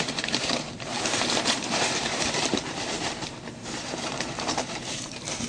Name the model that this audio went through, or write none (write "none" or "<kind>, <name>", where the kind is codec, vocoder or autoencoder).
vocoder, BigVGAN v2